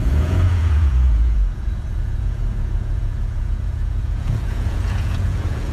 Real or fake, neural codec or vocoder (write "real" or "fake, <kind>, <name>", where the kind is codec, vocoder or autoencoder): fake, vocoder, Vocos